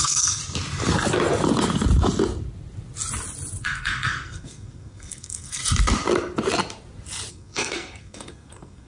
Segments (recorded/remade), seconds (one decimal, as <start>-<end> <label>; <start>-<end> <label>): 0.0-0.4 remade; 0.4-3.6 recorded; 3.6-5.6 remade; 5.6-7.3 recorded; 7.3-8.9 remade